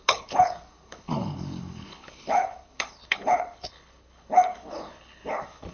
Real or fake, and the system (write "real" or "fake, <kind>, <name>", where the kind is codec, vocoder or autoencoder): fake, codec, HILCodec